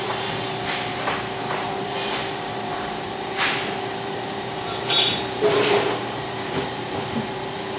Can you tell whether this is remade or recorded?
remade